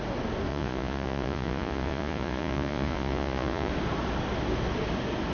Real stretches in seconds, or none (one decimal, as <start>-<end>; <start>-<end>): 0.0-0.5; 3.7-5.3